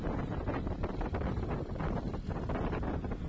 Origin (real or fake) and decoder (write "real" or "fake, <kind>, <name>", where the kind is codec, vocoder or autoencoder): real